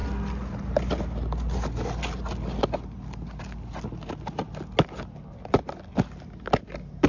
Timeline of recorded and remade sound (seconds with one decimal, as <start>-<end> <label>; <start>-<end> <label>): 0.0-7.1 recorded